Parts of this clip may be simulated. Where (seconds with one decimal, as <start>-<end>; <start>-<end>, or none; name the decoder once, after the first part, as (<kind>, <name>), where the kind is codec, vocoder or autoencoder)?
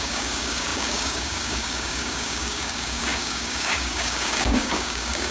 0.0-5.3 (codec, DAC)